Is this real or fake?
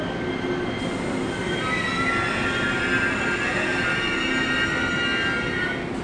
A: real